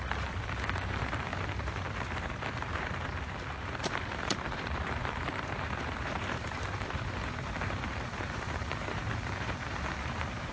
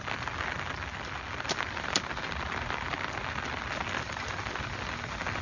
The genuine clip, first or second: second